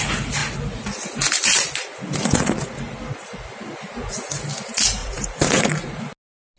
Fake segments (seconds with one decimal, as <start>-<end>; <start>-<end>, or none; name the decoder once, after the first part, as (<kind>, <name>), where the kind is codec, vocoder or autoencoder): 5.0-6.0 (vocoder, Vocos)